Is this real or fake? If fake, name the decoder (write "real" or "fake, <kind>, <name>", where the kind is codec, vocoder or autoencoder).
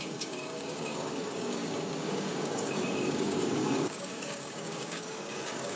fake, codec, DAC